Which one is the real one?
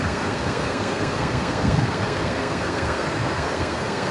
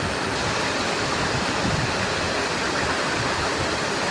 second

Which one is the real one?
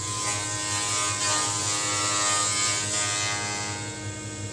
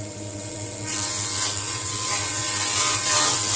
first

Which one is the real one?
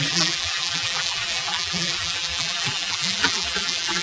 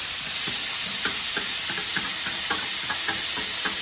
second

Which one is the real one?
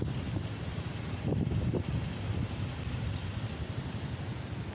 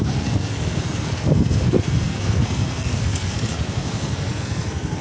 first